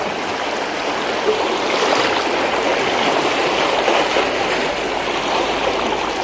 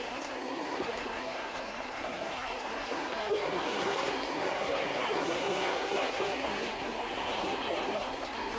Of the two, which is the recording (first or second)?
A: first